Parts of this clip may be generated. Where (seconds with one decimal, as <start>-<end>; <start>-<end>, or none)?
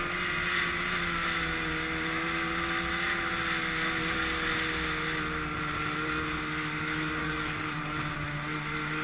7.2-7.8